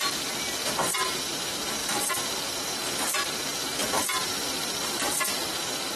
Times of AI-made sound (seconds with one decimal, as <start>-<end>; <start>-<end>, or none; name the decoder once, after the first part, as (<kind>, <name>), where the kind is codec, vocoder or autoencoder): 3.8-5.5 (vocoder, BigVGAN v2)